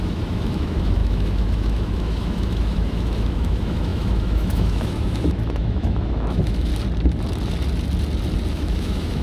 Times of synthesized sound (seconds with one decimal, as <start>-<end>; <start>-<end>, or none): 0.0-6.7; 8.5-9.2